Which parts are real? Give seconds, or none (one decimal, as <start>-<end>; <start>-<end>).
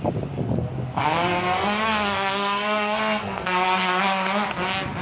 0.0-1.0; 4.0-5.0